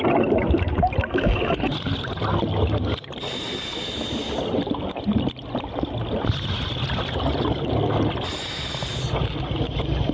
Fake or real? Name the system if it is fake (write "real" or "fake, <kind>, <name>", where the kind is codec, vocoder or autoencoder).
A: real